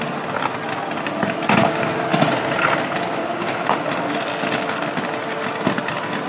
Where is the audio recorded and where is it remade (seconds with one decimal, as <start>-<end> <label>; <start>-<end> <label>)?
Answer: 0.0-6.3 recorded